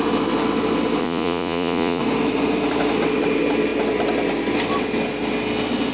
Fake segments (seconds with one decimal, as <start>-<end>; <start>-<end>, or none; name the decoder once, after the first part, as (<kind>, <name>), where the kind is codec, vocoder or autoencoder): 1.0-2.0 (vocoder, Vocos)